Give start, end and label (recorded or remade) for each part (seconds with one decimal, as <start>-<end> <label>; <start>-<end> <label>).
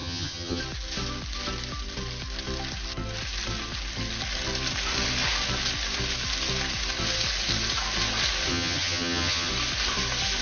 0.0-0.6 remade; 0.6-8.5 recorded; 8.5-9.5 remade; 9.5-10.4 recorded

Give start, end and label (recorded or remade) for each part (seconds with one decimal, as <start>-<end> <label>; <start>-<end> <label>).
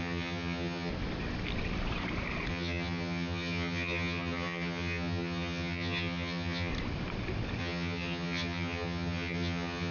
0.0-0.9 remade; 0.9-2.5 recorded; 2.5-6.7 remade; 6.7-7.6 recorded; 7.6-9.9 remade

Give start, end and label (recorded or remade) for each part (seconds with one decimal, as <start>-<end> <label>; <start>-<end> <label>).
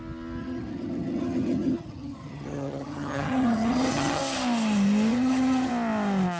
0.0-0.4 recorded; 0.4-4.2 remade; 4.2-5.1 recorded; 5.1-5.7 remade; 5.7-6.4 recorded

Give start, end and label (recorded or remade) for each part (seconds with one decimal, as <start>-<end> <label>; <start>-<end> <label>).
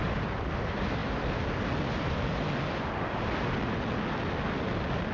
0.0-5.1 recorded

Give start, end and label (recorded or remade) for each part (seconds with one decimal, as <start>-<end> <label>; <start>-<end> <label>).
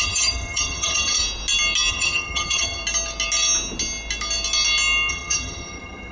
0.0-1.2 remade; 1.2-1.9 recorded; 1.9-2.8 remade; 2.8-5.1 recorded; 5.1-6.1 remade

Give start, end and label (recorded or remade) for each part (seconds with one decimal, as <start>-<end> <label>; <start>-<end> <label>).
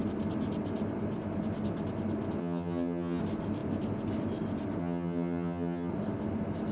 0.0-2.4 recorded; 2.4-3.2 remade; 3.2-4.8 recorded; 4.8-5.9 remade; 5.9-6.7 recorded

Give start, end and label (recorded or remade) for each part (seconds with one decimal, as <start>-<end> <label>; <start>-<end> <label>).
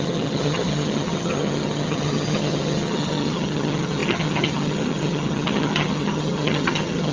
0.0-7.1 remade